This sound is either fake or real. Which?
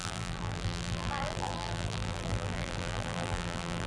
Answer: fake